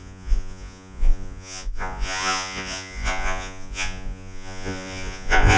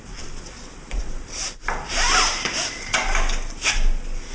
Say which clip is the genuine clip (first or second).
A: second